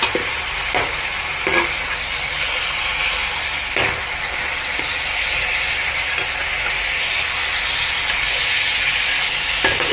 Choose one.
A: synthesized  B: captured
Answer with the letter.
B